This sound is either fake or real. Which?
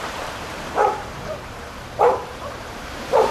fake